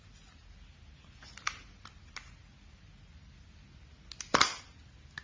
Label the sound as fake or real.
real